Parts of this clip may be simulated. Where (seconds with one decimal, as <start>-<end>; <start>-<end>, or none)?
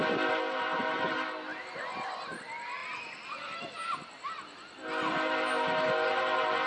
none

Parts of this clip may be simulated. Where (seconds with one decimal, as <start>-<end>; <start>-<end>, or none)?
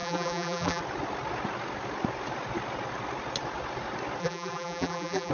0.0-0.8; 4.2-5.3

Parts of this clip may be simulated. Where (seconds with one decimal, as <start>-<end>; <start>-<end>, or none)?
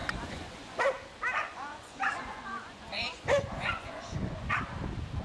0.0-0.8; 1.4-4.5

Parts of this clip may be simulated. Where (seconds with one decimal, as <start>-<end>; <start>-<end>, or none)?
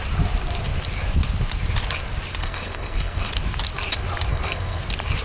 2.4-3.3; 4.3-4.8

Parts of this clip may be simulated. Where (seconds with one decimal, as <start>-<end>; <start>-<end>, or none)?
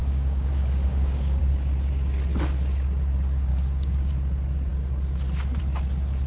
0.0-1.4; 3.5-4.1